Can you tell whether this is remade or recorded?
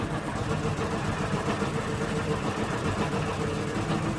recorded